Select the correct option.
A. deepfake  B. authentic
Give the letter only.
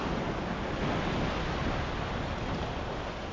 B